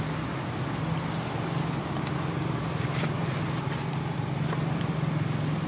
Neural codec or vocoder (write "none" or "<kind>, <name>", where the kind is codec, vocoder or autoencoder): none